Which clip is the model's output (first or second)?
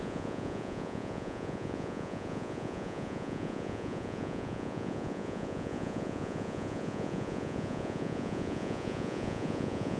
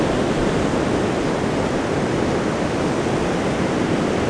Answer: first